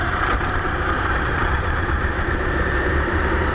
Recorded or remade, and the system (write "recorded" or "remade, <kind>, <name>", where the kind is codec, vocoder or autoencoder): remade, vocoder, BigVGAN v2